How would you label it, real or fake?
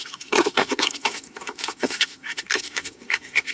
fake